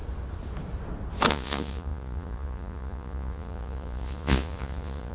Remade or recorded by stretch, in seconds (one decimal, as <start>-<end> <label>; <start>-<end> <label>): 0.0-1.3 recorded; 1.3-5.1 remade